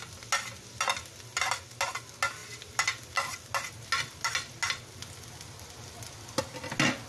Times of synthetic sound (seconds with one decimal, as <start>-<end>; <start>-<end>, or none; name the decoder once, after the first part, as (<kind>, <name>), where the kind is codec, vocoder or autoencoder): none